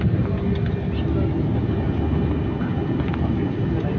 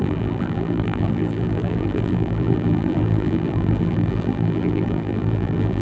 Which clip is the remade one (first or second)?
second